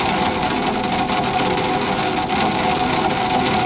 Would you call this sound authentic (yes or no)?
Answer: yes